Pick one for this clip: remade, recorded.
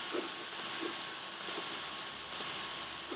recorded